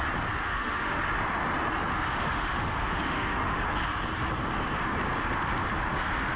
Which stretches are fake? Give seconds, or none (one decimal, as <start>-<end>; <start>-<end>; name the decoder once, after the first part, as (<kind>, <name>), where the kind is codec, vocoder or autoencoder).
0.4-1.0 (autoencoder, DAC-VAE); 1.9-3.6